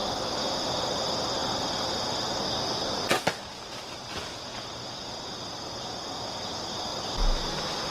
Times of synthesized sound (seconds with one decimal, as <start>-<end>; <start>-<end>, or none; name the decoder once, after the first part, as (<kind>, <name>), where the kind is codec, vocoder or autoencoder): none

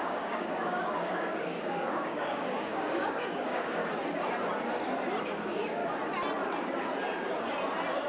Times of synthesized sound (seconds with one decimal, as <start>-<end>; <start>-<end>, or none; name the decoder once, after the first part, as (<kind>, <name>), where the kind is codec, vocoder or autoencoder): 0.0-3.8 (codec, DAC); 5.2-5.8

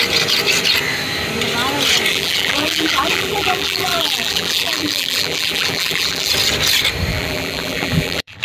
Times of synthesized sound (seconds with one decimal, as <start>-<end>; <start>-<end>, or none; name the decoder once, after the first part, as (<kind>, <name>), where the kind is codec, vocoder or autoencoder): 2.1-6.3 (vocoder, BigVGAN v2); 7.1-8.4